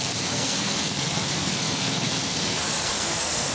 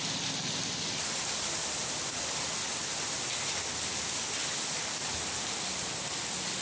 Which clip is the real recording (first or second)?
second